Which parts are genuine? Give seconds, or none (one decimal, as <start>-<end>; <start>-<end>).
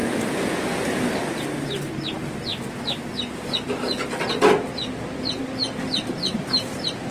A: 0.8-7.1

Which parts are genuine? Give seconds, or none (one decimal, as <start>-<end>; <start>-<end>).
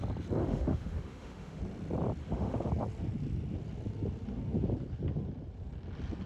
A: 0.0-0.4; 1.6-2.2; 2.7-6.3